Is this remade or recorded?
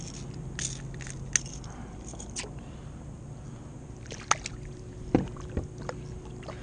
recorded